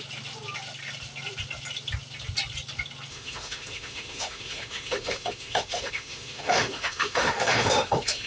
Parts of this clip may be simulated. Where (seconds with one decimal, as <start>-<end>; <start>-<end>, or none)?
3.1-8.3